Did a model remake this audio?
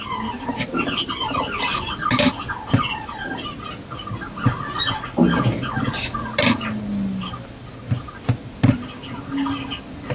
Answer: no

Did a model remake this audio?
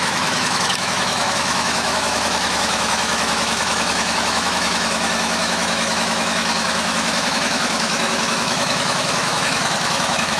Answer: yes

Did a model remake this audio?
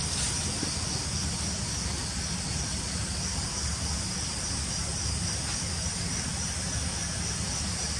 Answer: no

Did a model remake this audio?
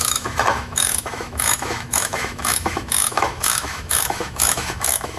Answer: yes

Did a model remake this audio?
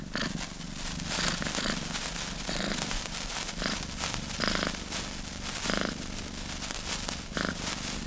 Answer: no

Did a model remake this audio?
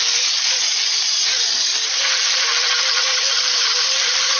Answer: yes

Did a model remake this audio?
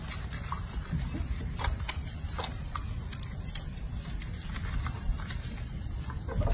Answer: yes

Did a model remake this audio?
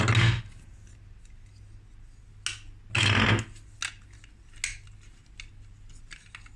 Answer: no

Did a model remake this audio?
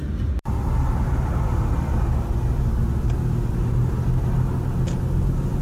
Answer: no